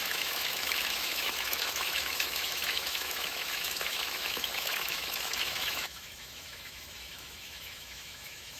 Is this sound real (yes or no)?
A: no